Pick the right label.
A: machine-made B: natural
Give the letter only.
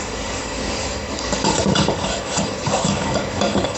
A